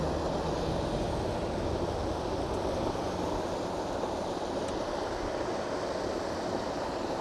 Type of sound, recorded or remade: recorded